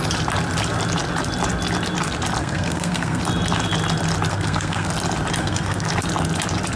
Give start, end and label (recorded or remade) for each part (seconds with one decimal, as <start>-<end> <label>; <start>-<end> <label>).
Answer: 0.0-2.4 recorded; 2.4-3.2 remade; 3.2-4.3 recorded; 4.3-4.9 remade; 4.9-5.4 recorded; 5.4-5.9 remade; 5.9-6.8 recorded